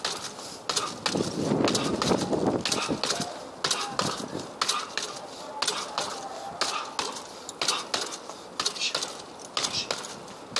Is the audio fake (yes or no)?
no